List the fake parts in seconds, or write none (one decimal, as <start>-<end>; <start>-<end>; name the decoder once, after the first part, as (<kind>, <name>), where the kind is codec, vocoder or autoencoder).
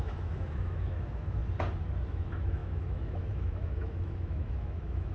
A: 0.0-1.4 (autoencoder, DAC-VAE); 2.1-5.1